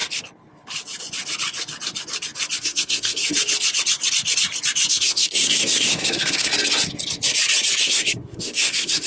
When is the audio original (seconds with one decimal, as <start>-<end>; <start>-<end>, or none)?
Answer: 0.0-2.6; 3.2-4.9; 6.5-7.8